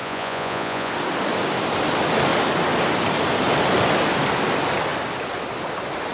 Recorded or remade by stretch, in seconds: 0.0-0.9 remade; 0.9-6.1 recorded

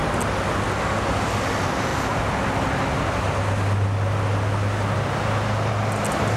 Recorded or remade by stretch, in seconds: 0.0-6.4 recorded